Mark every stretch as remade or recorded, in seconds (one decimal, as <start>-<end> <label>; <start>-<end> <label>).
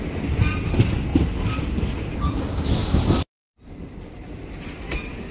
0.0-5.3 recorded